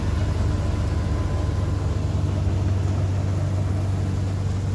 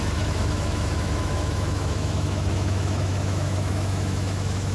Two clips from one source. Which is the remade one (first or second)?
second